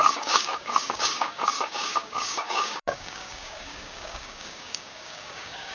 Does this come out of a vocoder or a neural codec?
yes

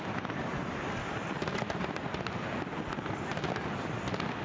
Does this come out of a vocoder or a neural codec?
no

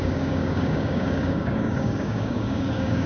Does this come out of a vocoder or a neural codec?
yes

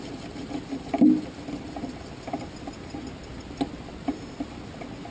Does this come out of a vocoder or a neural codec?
no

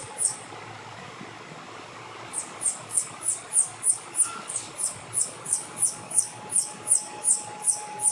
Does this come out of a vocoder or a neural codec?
yes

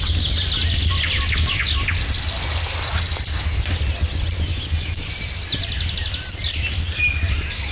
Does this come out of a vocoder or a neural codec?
no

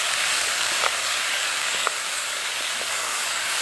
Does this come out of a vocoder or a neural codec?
yes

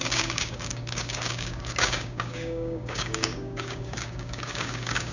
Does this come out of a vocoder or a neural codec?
yes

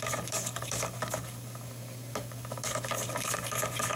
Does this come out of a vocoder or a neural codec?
yes